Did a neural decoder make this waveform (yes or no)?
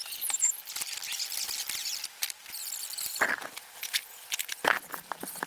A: no